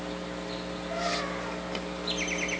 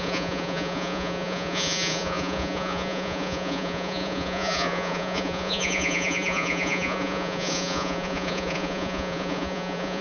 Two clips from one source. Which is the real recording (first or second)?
first